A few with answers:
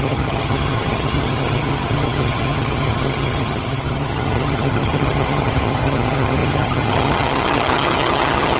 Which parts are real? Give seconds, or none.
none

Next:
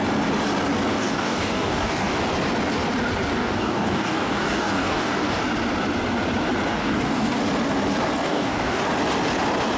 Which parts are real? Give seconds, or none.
0.0-0.9; 2.2-3.3; 5.4-6.7; 7.4-8.3; 8.8-9.8

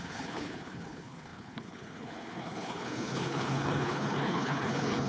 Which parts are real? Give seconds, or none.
none

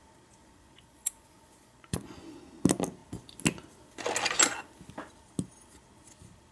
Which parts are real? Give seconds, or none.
0.0-0.4; 2.4-6.5